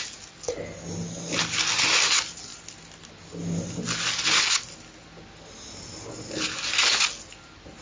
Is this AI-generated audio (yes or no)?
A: no